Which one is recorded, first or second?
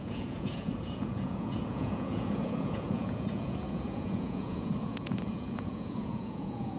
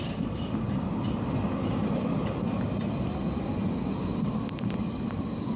second